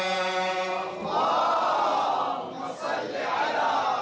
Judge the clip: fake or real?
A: real